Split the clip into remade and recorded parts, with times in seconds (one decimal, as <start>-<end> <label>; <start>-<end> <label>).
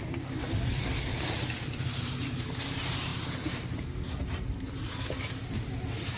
0.0-1.1 recorded; 1.1-2.0 remade; 2.0-6.2 recorded